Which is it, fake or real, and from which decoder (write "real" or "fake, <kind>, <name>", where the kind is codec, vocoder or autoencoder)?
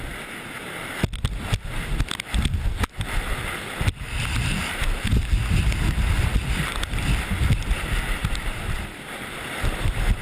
real